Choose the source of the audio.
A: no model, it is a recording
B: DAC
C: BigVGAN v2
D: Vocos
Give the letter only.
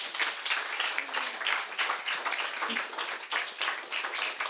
A